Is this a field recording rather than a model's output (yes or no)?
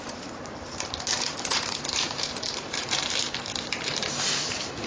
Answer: no